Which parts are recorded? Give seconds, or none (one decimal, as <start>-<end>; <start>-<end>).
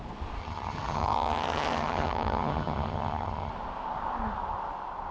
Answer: 0.0-0.4; 3.5-5.1